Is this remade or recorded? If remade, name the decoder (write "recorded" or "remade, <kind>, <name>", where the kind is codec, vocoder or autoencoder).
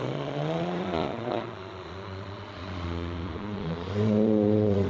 remade, vocoder, Vocos